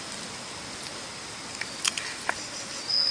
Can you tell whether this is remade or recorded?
recorded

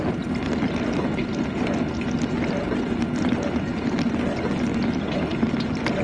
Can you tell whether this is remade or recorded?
recorded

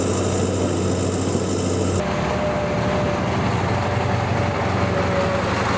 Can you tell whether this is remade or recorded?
recorded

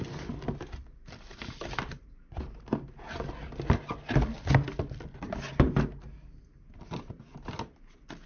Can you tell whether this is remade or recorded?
recorded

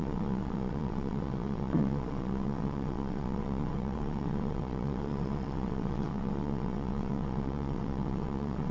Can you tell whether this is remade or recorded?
remade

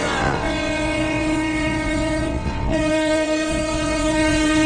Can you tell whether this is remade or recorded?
remade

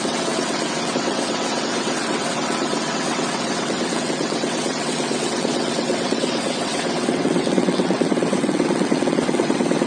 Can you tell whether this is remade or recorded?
remade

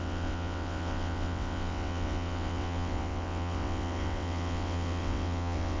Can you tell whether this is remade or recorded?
remade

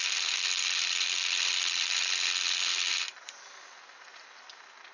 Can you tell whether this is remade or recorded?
recorded